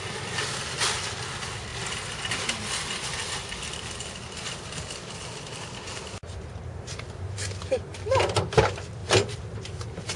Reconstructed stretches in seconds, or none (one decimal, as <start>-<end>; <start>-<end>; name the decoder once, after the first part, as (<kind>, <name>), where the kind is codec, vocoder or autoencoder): 9.0-10.2 (vocoder, BigVGAN v2)

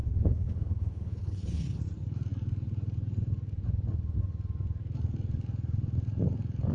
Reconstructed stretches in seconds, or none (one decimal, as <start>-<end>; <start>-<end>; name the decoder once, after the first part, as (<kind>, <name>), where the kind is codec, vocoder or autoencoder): 0.0-1.8 (codec, HILCodec)

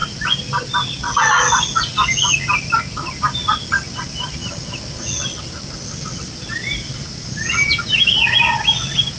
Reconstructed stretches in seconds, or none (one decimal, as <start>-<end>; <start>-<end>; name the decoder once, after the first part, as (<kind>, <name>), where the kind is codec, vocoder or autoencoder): 0.0-0.7 (vocoder, BigVGAN v2)

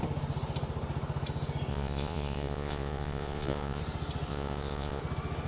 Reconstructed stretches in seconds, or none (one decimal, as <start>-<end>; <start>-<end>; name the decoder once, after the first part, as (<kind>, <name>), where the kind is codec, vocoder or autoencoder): 1.7-3.8 (vocoder, Vocos); 4.3-5.0